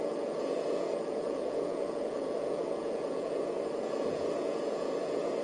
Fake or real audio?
fake